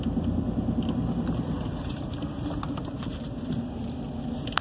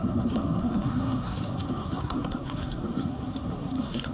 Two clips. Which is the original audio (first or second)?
first